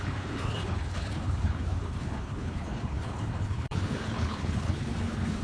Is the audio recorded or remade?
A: remade